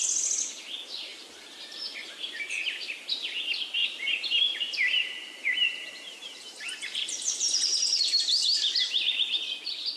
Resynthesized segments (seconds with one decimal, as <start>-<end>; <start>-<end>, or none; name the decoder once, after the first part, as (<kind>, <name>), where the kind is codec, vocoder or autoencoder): 1.1-3.4 (vocoder, BigVGAN v2); 3.8-8.0

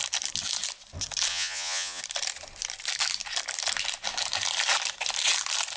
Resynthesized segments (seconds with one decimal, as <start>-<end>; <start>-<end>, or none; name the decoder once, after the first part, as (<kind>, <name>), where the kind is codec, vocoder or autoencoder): 1.3-2.0 (vocoder, Vocos)

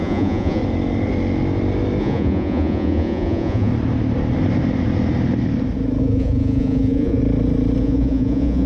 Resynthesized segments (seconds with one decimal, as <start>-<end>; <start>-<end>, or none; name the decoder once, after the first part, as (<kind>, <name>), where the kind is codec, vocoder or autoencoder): 0.0-0.6 (vocoder, Vocos); 2.0-3.7; 6.0-7.2; 7.8-8.7

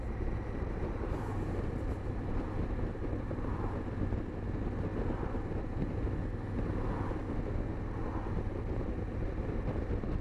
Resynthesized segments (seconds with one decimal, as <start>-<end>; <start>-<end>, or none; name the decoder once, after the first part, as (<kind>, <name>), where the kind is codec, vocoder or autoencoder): none

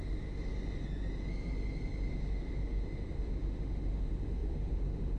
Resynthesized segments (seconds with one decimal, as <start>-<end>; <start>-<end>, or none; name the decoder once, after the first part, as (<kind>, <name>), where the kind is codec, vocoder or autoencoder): 0.0-0.5 (autoencoder, DAC-VAE); 2.1-5.2